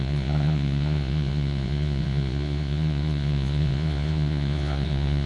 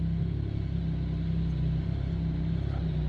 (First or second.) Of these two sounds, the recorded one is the second